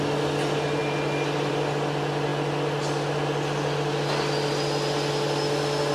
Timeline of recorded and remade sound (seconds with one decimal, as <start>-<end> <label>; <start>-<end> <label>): 0.0-5.9 recorded